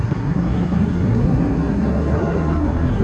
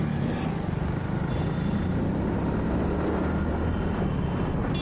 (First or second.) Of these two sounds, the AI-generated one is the first